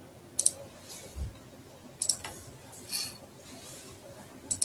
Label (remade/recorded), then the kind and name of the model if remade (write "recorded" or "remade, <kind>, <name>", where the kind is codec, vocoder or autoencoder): recorded